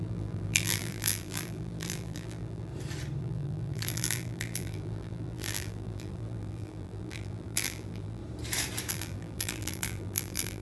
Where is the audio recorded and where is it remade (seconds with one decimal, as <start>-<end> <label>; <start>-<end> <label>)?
0.0-2.7 remade; 2.7-3.2 recorded; 3.2-8.2 remade; 8.2-8.9 recorded; 8.9-10.6 remade